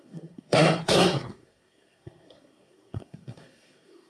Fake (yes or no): yes